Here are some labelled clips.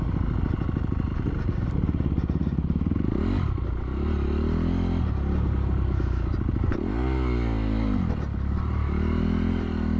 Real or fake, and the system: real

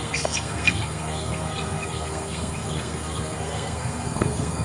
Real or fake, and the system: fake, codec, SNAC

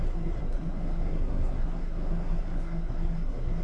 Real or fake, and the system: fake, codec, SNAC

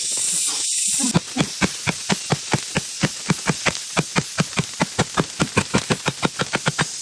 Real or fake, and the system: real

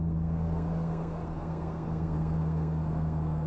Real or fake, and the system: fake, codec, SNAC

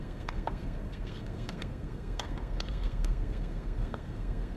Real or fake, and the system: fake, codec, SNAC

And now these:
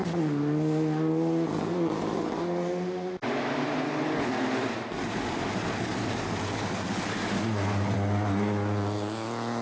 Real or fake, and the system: real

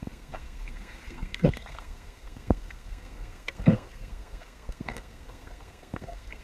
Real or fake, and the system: fake, codec, SNAC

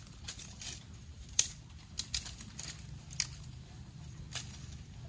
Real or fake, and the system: real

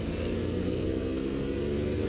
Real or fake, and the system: fake, codec, SNAC